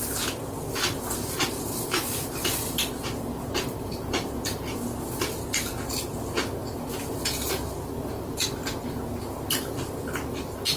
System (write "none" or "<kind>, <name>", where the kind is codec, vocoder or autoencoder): vocoder, BigVGAN v2